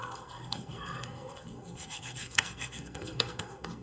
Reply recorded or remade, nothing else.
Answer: remade